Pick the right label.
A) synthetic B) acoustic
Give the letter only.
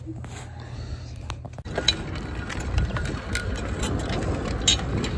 B